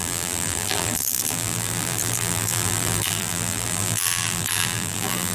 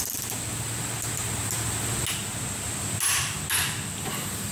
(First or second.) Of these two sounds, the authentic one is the second